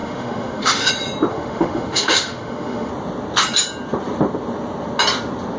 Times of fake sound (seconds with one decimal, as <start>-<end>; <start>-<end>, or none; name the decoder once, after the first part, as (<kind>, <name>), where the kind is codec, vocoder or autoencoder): 0.0-0.9 (autoencoder, DAC-VAE); 1.3-2.9

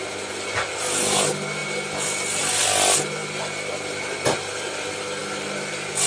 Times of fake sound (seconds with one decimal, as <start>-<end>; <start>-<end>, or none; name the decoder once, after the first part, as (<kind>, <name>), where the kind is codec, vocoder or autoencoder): none

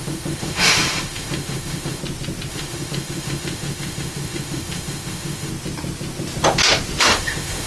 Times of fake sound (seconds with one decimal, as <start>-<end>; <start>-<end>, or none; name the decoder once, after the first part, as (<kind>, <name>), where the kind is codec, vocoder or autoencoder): 0.0-2.0 (autoencoder, DAC-VAE); 2.5-5.5; 7.0-7.7

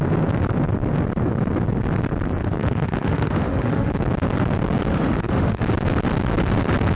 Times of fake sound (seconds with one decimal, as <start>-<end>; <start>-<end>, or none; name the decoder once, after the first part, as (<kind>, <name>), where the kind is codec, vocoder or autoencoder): 2.4-3.9 (autoencoder, DAC-VAE); 4.9-5.6

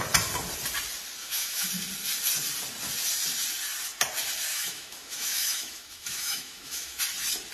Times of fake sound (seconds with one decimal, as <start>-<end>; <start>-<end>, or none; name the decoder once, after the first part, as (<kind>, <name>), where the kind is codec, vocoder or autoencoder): 1.2-1.7 (autoencoder, DAC-VAE); 4.5-7.0

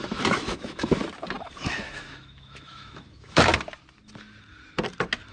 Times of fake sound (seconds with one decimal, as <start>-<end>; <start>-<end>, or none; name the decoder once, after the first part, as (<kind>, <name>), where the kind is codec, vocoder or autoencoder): 0.0-1.0 (autoencoder, DAC-VAE); 1.6-3.5